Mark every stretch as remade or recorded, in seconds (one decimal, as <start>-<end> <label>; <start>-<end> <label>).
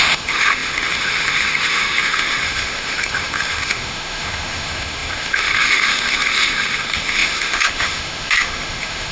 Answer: 0.0-9.1 remade